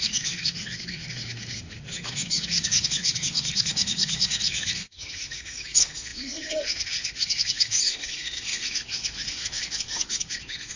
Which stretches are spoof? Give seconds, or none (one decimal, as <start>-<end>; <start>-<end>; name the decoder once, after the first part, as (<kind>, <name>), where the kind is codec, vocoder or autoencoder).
0.0-10.8 (autoencoder, DAC-VAE)